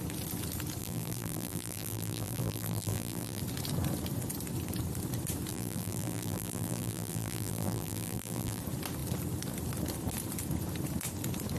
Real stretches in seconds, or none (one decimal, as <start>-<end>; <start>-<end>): 0.0-0.8; 3.4-5.5; 8.6-11.6